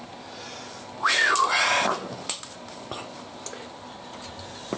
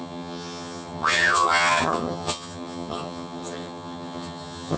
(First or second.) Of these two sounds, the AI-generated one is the second